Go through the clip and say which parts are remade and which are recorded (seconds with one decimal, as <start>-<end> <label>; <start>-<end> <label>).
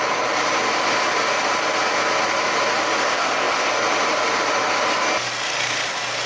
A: 0.0-3.0 recorded; 3.0-3.7 remade; 3.7-6.3 recorded